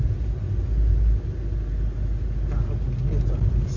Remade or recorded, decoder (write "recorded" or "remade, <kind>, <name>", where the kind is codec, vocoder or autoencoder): recorded